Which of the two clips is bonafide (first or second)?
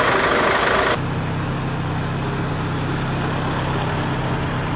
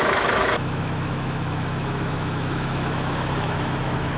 first